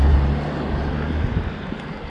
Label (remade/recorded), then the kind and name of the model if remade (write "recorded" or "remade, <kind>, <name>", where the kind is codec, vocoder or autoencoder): recorded